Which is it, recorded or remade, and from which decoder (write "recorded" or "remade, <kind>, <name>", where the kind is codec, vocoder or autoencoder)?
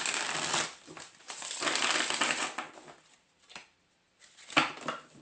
recorded